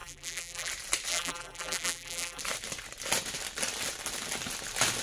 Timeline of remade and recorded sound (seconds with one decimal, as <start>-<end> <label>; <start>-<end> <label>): 0.0-0.7 remade; 0.7-1.1 recorded; 1.1-2.4 remade; 2.4-5.0 recorded